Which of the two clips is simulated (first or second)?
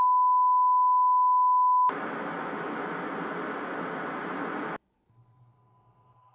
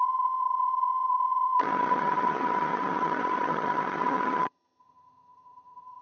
second